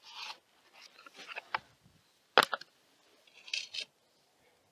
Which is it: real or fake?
real